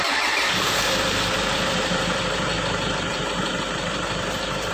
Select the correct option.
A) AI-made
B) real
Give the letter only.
A